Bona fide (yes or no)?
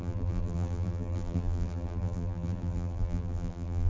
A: no